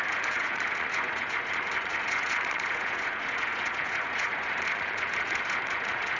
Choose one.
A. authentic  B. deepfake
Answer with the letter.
B